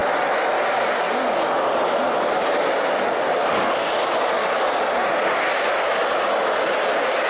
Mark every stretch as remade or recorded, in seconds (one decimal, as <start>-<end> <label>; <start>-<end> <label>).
0.0-7.3 recorded

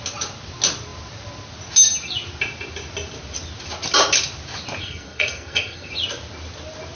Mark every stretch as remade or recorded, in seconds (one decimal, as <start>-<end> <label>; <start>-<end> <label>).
0.0-4.8 recorded; 4.8-5.9 remade; 5.9-7.0 recorded

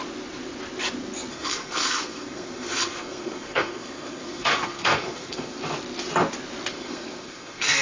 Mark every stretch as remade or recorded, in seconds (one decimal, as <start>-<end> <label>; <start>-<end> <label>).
0.0-1.3 recorded; 1.3-5.6 remade; 5.6-6.7 recorded; 6.7-7.8 remade

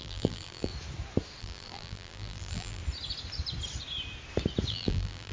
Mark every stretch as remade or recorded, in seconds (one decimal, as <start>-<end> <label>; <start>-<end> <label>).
0.0-0.7 remade; 0.7-1.4 recorded; 1.4-2.8 remade; 2.8-4.7 recorded; 4.7-5.3 remade

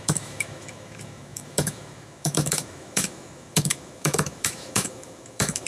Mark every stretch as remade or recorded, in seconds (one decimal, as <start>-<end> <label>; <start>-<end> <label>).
0.0-5.7 remade

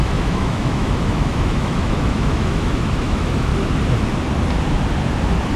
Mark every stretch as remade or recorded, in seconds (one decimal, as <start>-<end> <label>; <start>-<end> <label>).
0.0-3.5 remade; 3.5-5.6 recorded

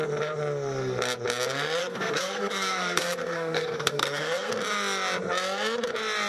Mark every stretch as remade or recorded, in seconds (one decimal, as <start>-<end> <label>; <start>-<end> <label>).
0.0-1.8 recorded; 1.8-4.5 remade; 4.5-6.3 recorded